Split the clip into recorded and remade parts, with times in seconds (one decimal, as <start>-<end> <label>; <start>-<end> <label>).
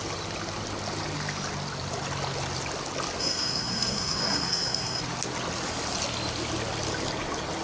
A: 0.0-3.2 recorded; 3.2-5.0 remade; 5.0-7.6 recorded